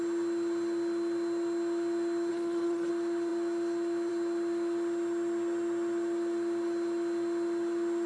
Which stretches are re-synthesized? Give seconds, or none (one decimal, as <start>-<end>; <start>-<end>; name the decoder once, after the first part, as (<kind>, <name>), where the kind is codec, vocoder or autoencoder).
2.3-2.9 (codec, SNAC)